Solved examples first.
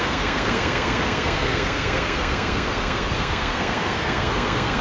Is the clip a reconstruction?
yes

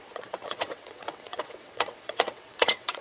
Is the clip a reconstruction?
yes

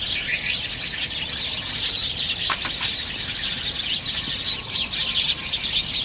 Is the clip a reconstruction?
no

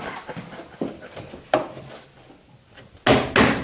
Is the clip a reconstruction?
no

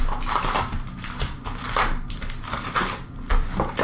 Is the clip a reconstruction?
no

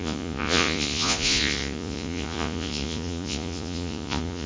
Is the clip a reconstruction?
yes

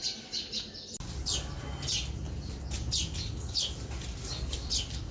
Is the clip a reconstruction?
no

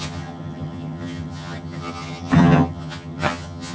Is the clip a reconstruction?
yes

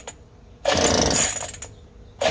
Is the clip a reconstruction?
no